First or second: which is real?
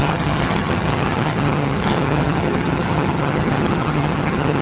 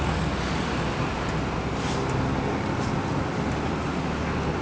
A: second